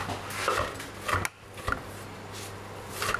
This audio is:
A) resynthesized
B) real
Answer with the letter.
B